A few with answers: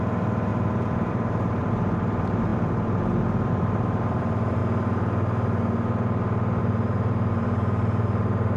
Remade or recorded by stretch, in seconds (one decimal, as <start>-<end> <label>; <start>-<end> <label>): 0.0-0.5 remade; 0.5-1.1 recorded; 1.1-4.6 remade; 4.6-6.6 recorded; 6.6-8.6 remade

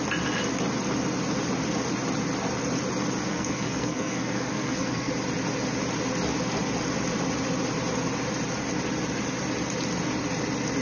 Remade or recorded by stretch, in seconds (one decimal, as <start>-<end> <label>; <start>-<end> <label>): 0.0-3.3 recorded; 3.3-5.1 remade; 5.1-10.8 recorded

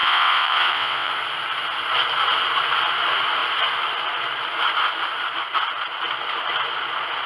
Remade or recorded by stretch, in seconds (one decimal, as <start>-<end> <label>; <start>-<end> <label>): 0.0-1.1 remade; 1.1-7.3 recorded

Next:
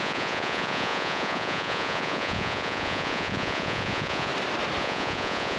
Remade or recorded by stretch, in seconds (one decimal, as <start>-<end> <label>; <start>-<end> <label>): 0.0-4.3 remade; 4.3-4.8 recorded; 4.8-5.6 remade

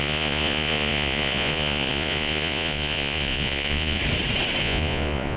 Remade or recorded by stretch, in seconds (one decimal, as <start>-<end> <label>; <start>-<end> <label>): 0.0-4.0 remade; 4.0-4.6 recorded; 4.6-5.4 remade